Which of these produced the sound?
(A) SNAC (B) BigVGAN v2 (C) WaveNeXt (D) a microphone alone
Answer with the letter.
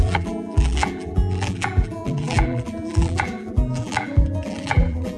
B